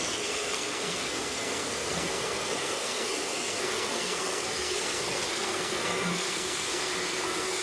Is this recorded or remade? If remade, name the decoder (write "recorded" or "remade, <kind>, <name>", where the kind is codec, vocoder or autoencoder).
remade, codec, SNAC